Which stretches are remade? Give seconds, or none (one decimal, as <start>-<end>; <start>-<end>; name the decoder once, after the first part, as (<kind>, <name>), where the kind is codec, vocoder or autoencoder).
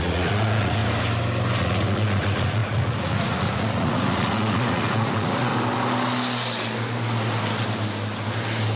0.0-0.8 (vocoder, Vocos); 1.6-5.5